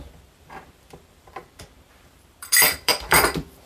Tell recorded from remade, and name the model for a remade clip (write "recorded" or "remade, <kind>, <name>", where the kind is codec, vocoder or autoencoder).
remade, vocoder, BigVGAN v2